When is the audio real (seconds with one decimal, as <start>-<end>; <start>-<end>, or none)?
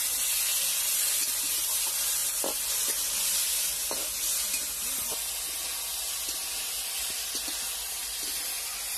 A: 0.0-9.0